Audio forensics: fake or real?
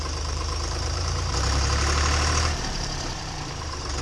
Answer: fake